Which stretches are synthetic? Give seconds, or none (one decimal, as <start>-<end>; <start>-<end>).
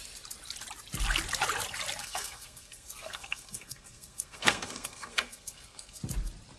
2.0-6.0